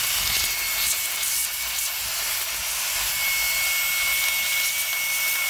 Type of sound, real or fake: real